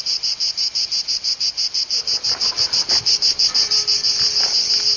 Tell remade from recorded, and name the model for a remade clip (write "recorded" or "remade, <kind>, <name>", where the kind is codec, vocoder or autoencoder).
recorded